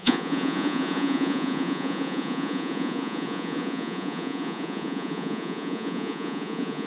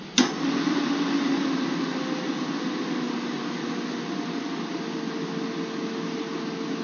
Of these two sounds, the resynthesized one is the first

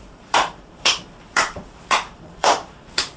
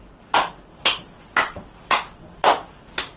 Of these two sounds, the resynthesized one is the first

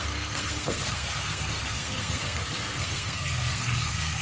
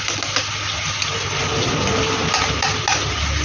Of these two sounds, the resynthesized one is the first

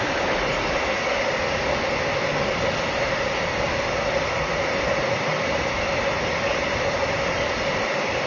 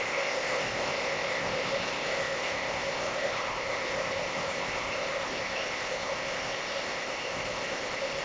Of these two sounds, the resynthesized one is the second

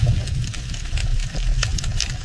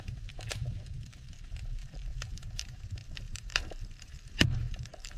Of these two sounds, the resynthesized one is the second